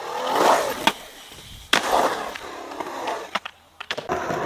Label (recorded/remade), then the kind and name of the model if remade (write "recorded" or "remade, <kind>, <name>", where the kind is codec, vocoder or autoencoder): recorded